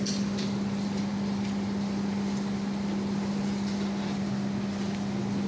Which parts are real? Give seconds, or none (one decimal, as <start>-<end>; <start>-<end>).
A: 0.0-5.5